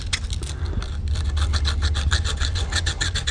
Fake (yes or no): no